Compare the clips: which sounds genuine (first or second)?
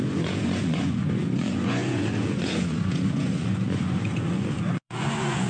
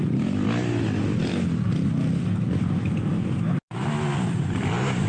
second